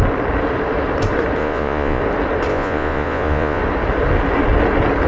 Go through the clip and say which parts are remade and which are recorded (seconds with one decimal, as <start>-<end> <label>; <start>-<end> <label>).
0.0-1.4 recorded; 1.4-2.0 remade; 2.0-2.5 recorded; 2.5-3.6 remade; 3.6-5.1 recorded